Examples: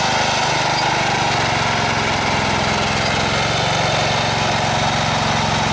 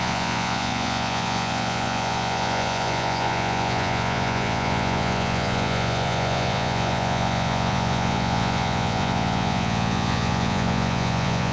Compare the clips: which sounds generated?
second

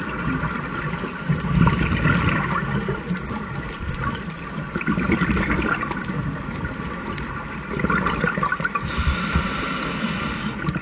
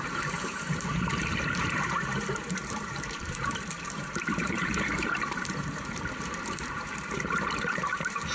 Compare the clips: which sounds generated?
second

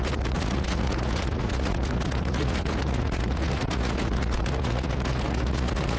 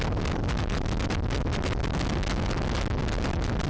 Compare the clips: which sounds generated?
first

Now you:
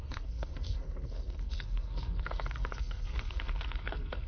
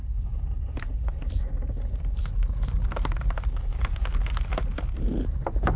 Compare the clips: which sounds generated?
first